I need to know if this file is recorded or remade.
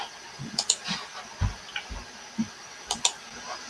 recorded